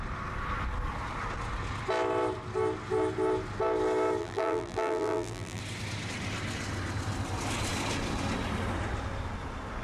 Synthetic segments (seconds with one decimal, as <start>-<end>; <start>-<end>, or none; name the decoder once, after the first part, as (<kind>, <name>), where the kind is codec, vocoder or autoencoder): 4.2-5.6 (vocoder, BigVGAN v2)